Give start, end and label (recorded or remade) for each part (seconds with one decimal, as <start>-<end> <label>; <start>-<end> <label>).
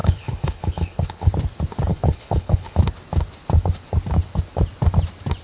0.0-1.3 remade; 1.3-1.9 recorded; 1.9-2.8 remade; 2.8-5.4 recorded